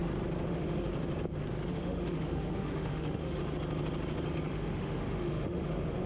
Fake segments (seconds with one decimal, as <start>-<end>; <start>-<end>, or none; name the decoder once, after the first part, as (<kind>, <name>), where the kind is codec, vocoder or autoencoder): 0.5-0.9 (autoencoder, DAC-VAE); 1.7-3.4; 4.5-6.1